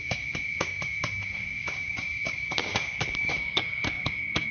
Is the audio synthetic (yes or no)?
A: yes